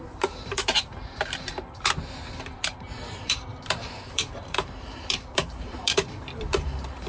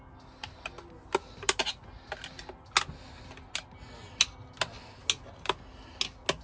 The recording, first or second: second